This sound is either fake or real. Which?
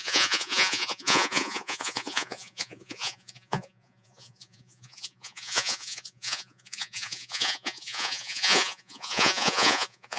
fake